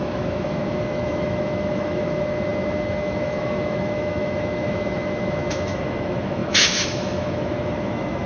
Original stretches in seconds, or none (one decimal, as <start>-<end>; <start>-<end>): none